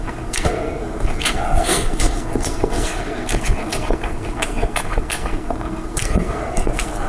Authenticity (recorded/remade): remade